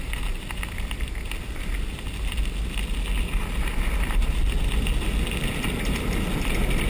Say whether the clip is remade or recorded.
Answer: recorded